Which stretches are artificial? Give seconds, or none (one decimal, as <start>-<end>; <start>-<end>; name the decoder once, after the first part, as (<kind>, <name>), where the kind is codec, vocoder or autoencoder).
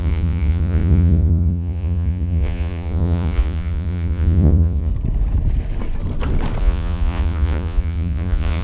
0.0-4.9 (vocoder, Vocos); 6.6-8.6